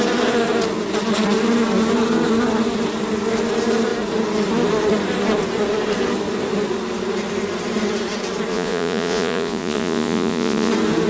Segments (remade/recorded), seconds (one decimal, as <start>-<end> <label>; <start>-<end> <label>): 0.0-8.5 recorded; 8.5-10.7 remade; 10.7-11.1 recorded